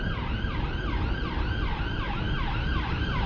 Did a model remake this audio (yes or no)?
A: yes